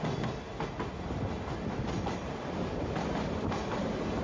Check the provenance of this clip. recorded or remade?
recorded